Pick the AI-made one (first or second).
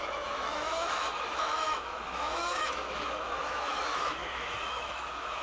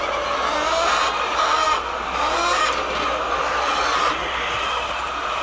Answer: first